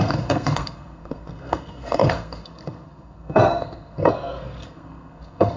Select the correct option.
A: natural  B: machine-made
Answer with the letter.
B